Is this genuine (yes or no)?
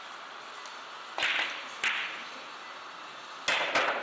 yes